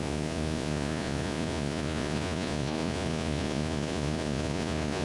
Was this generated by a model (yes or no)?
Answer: yes